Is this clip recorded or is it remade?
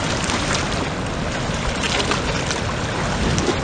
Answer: recorded